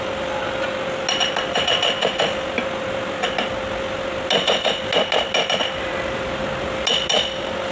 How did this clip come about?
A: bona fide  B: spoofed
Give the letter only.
A